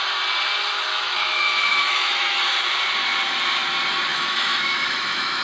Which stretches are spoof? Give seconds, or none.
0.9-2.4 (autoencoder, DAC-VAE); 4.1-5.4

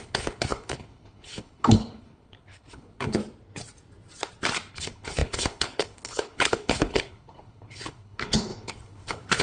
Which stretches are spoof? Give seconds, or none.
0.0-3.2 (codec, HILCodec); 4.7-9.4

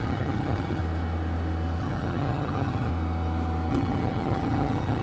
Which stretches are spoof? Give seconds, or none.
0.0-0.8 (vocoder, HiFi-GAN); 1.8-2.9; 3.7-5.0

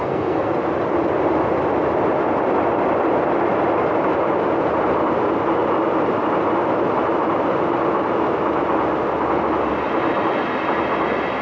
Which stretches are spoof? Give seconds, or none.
0.0-0.5 (codec, SNAC)

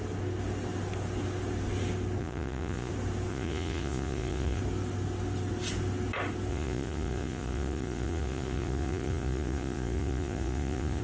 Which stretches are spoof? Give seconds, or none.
2.2-2.9 (vocoder, Vocos); 3.3-4.6; 6.5-11.0

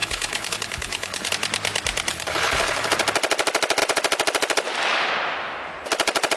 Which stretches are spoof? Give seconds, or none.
0.0-1.3 (codec, HILCodec); 2.1-2.9